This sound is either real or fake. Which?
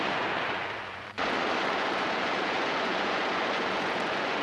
fake